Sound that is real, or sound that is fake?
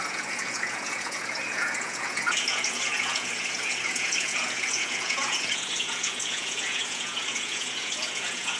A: fake